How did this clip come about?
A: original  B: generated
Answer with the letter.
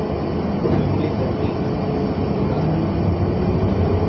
A